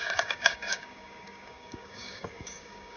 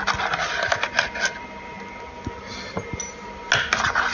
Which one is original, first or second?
second